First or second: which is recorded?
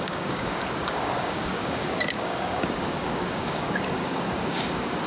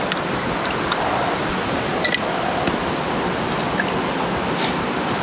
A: second